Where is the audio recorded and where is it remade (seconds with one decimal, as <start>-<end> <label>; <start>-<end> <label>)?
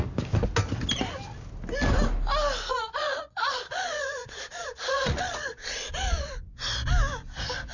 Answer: 0.0-2.7 recorded; 2.7-6.3 remade; 6.3-7.7 recorded